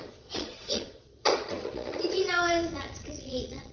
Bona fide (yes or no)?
no